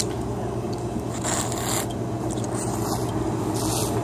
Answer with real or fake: real